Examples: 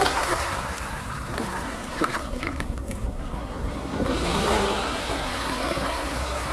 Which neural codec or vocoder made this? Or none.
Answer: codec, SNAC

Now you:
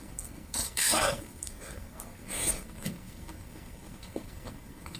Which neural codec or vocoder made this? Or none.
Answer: codec, SNAC